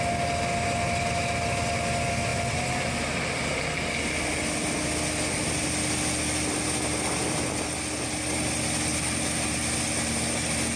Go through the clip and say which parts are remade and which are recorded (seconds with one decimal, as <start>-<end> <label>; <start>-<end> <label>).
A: 0.0-10.8 recorded

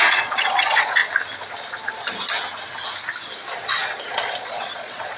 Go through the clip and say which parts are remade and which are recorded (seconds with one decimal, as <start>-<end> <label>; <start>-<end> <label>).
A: 0.0-1.0 remade; 1.0-4.1 recorded; 4.1-5.2 remade